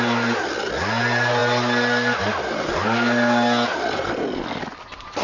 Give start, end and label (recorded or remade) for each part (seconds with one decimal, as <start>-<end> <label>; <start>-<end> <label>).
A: 0.0-5.2 recorded